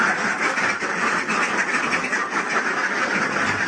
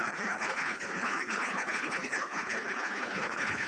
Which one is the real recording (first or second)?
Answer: first